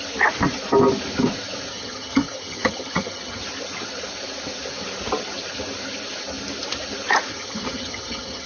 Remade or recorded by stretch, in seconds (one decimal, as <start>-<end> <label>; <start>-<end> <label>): 0.0-1.7 recorded; 1.7-3.4 remade; 3.4-7.3 recorded; 7.3-8.5 remade

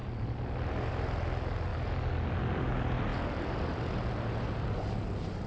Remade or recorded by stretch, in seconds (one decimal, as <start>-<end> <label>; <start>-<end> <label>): 0.0-5.5 recorded

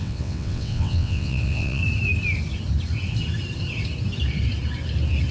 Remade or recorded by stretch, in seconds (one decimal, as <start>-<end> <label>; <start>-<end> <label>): 0.0-1.8 remade; 1.8-5.3 recorded

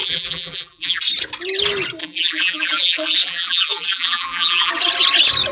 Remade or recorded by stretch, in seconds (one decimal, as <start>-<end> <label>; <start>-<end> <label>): 0.0-1.0 remade; 1.0-2.0 recorded; 2.0-4.7 remade; 4.7-5.5 recorded

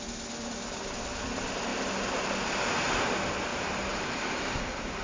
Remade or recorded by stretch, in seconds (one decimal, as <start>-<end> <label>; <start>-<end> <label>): 0.0-3.5 recorded; 3.5-4.4 remade; 4.4-5.0 recorded